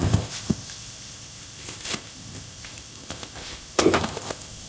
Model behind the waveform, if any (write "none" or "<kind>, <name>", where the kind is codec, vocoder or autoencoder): codec, ZipCodec